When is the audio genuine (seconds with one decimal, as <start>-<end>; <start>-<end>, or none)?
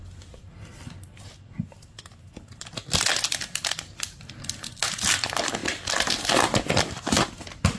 0.0-7.8